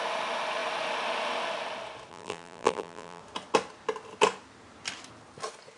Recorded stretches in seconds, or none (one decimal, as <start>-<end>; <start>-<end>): 0.0-2.1; 3.2-5.8